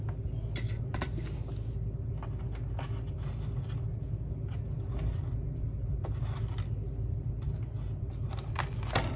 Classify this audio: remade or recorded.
recorded